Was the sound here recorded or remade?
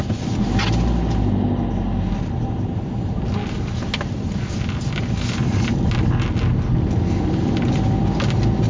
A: recorded